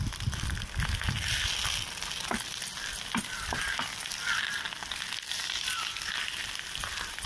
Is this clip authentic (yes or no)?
yes